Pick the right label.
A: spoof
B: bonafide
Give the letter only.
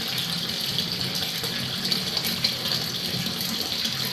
B